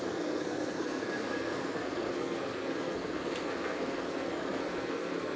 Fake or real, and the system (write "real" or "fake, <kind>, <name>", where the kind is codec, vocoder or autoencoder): fake, codec, SNAC